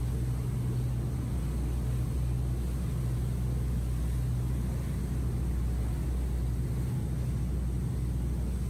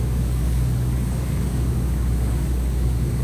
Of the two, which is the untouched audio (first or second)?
first